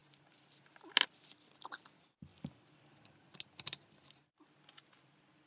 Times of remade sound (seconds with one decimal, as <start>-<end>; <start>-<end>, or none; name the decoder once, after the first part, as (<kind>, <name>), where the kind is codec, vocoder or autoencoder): none